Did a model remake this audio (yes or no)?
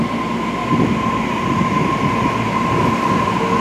no